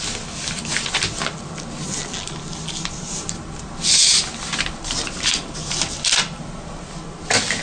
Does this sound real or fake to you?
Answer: real